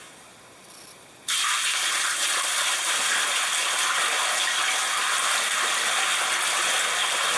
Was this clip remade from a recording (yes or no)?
no